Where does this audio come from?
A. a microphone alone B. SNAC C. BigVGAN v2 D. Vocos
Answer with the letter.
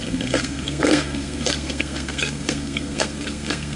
B